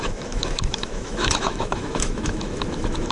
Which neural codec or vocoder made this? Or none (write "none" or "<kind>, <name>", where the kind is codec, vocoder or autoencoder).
autoencoder, DAC-VAE